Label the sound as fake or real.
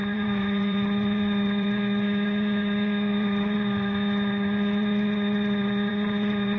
fake